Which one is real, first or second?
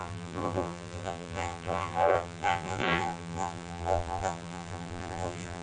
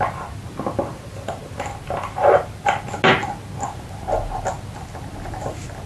second